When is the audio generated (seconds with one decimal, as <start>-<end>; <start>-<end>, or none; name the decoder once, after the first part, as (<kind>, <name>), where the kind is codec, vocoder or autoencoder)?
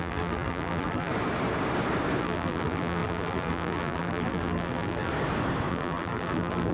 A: 0.0-1.1 (vocoder, BigVGAN v2); 2.2-5.1; 5.7-6.7